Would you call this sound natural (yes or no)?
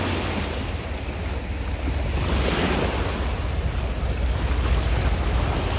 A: yes